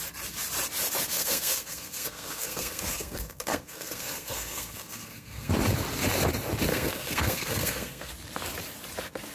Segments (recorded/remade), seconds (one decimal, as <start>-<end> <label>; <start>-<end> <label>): 0.0-1.1 recorded; 1.1-5.5 remade; 5.5-6.7 recorded; 6.7-8.1 remade; 8.1-9.3 recorded